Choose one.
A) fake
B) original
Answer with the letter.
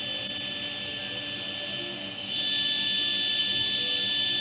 B